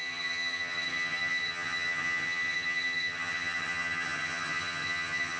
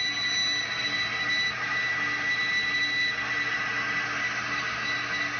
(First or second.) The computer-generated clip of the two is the first